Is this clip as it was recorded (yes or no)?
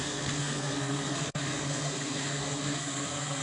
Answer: no